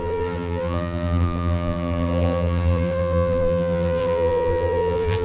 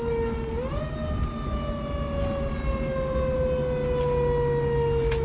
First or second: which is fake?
first